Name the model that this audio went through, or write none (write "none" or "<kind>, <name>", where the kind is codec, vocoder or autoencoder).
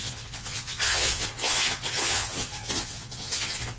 vocoder, Vocos